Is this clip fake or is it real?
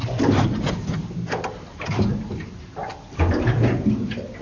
real